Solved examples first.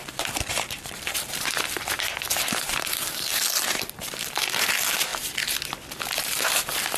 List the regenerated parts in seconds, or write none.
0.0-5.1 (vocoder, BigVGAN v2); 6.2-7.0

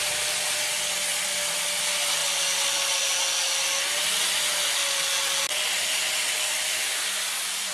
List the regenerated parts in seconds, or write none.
none

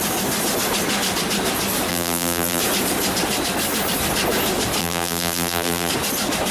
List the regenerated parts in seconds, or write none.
1.9-2.6 (vocoder, BigVGAN v2); 4.8-5.9

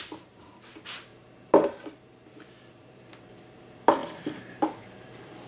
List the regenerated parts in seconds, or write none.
0.0-1.1 (vocoder, BigVGAN v2); 2.0-5.5

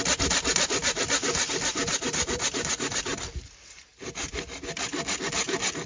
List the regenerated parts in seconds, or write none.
1.7-3.2 (vocoder, BigVGAN v2)

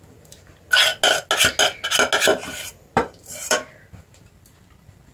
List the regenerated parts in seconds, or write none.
2.3-3.7 (vocoder, BigVGAN v2)

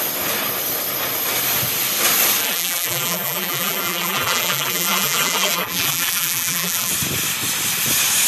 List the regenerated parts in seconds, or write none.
2.4-6.9 (vocoder, BigVGAN v2)